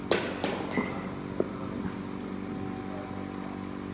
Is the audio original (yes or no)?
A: yes